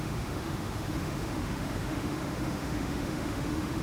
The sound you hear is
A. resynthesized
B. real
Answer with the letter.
A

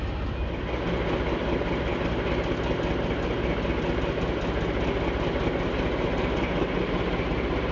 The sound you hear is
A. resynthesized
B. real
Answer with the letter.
B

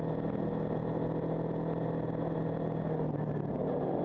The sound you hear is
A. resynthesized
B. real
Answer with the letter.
B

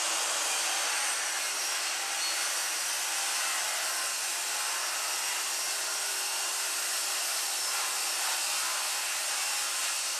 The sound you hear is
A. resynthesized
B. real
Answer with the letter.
B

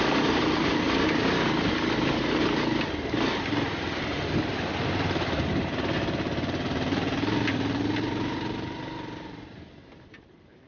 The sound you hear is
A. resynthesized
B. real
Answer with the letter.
B